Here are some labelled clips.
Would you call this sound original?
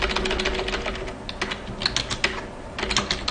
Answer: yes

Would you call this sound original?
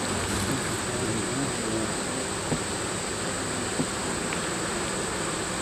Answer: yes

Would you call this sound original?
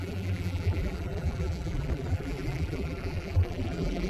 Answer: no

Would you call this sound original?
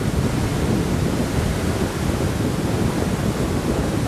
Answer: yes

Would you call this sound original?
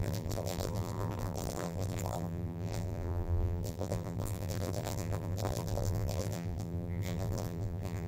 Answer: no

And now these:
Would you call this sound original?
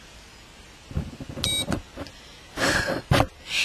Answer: yes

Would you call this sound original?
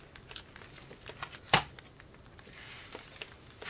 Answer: yes